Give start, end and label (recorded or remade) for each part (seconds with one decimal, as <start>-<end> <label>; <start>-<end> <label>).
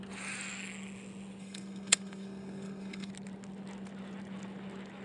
0.0-1.4 recorded; 1.4-3.1 remade; 3.1-5.0 recorded